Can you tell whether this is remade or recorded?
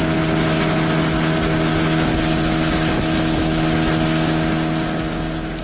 recorded